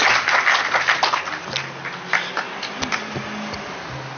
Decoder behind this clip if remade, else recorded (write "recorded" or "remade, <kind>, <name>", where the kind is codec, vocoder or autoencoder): recorded